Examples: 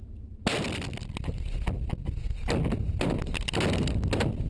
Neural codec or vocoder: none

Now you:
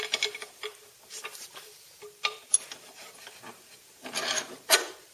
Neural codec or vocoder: vocoder, BigVGAN v2